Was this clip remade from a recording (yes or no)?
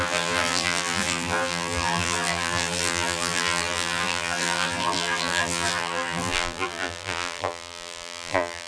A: yes